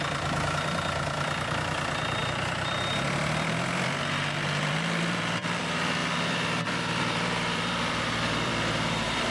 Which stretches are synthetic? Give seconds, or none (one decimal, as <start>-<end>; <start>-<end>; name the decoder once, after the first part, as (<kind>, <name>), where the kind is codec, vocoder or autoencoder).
2.2-5.6 (vocoder, BigVGAN v2); 6.0-8.5